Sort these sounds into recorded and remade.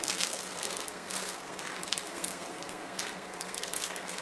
remade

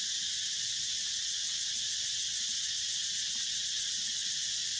recorded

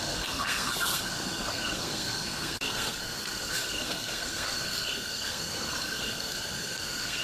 remade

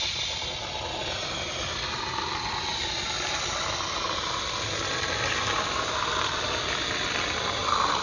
recorded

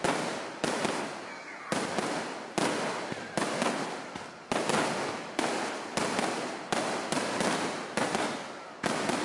recorded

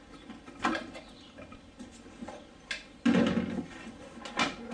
recorded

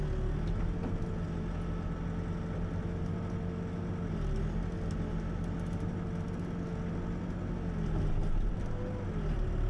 recorded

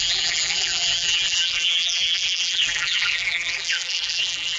remade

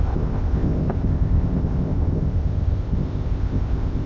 remade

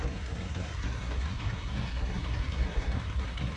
remade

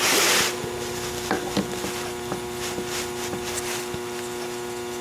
recorded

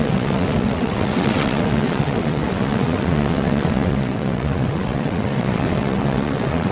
remade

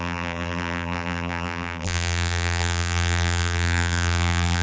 remade